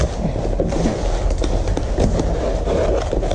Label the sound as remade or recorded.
recorded